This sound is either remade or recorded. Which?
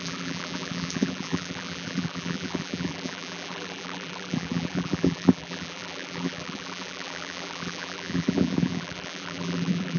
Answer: remade